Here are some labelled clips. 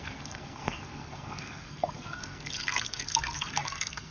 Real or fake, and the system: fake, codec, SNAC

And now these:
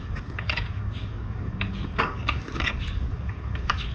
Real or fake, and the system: fake, codec, DAC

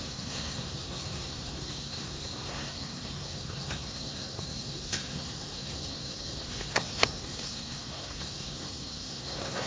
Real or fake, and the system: fake, codec, SNAC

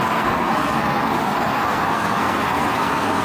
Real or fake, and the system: fake, codec, SNAC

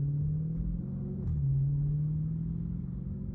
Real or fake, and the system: real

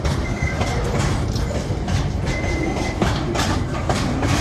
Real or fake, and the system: fake, vocoder, BigVGAN v2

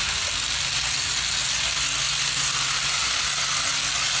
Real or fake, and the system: real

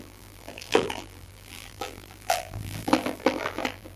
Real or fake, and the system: fake, vocoder, BigVGAN v2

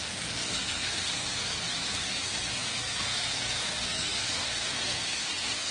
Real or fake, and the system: fake, codec, SNAC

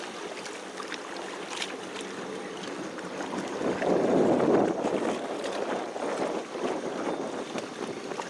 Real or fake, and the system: real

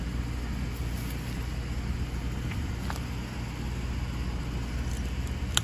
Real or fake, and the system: real